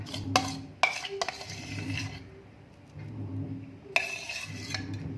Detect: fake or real real